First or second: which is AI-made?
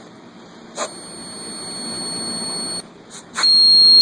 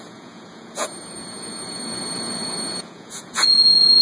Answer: second